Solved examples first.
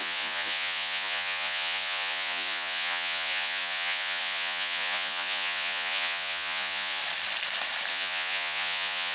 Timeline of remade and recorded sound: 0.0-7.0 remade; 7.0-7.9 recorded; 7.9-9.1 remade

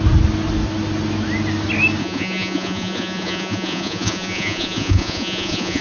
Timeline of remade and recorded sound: 0.0-2.0 recorded; 2.0-5.8 remade

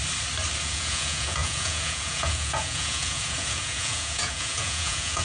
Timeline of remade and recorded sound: 0.0-0.6 recorded; 0.6-5.2 remade

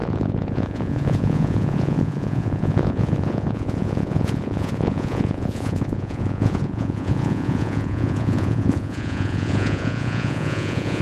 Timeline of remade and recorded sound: 0.0-11.0 remade

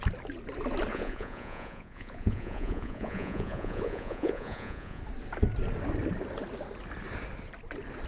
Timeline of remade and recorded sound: 0.0-0.9 recorded; 0.9-5.0 remade; 5.0-8.1 recorded

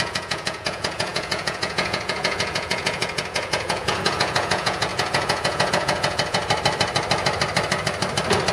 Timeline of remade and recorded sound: 0.0-6.4 remade; 6.4-8.5 recorded

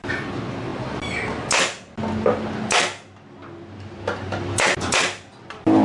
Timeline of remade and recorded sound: 0.0-5.8 recorded

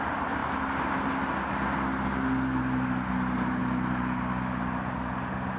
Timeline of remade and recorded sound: 0.0-5.6 recorded